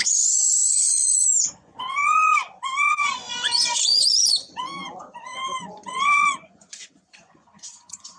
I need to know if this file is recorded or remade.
remade